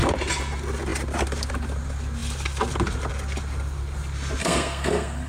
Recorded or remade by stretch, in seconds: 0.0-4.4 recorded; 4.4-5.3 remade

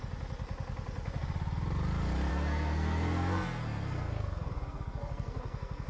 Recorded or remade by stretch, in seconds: 0.0-2.3 recorded; 2.3-5.9 remade

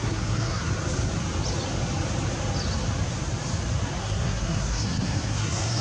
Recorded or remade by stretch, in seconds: 0.0-0.7 remade; 0.7-4.0 recorded; 4.0-5.8 remade

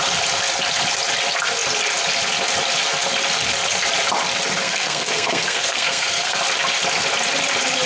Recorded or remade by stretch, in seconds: 0.0-4.6 recorded; 4.6-6.4 remade; 6.4-7.9 recorded

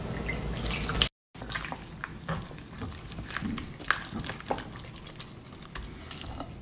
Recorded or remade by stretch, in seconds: 0.0-6.6 recorded

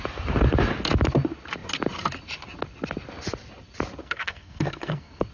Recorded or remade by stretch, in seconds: 0.0-4.0 recorded; 4.0-5.3 remade